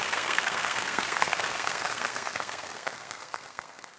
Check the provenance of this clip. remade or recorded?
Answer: remade